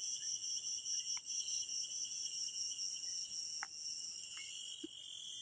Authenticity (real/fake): real